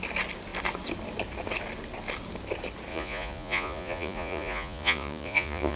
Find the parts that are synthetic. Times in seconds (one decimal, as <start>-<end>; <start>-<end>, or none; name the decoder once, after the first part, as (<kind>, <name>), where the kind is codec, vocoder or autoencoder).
2.9-5.8 (vocoder, Vocos)